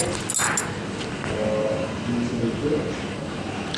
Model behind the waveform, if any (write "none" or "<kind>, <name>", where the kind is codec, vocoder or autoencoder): none